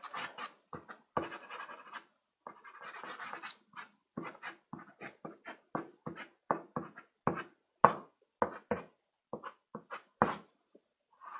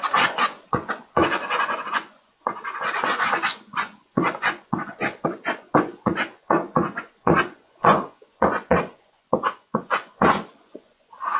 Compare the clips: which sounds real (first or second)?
first